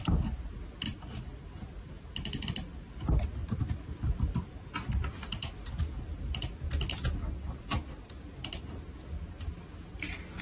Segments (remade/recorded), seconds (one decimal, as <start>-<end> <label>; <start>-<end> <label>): 0.0-0.9 recorded; 0.9-2.1 remade; 2.1-10.4 recorded